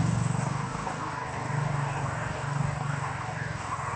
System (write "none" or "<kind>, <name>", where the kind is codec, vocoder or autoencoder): codec, DAC